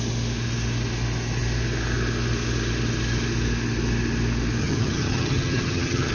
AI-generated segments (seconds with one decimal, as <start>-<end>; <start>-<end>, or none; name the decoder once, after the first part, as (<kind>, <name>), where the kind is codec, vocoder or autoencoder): 4.6-6.1 (vocoder, HiFi-GAN)